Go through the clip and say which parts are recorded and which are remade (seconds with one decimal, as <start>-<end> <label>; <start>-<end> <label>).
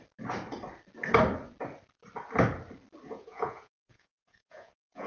0.0-3.1 recorded; 3.1-5.1 remade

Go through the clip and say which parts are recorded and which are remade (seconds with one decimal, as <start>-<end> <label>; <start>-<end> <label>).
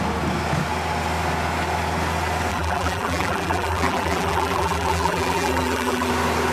0.0-2.5 recorded; 2.5-6.1 remade; 6.1-6.5 recorded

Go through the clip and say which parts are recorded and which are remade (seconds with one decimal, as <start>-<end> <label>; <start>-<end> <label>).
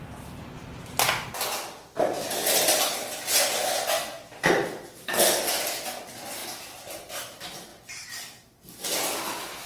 0.0-9.7 recorded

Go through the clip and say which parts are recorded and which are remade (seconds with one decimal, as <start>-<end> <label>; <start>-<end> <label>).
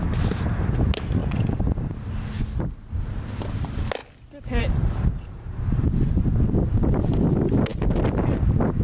0.0-8.8 recorded